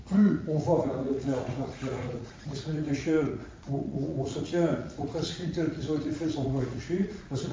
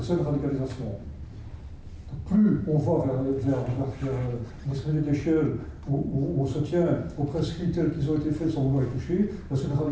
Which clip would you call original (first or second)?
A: second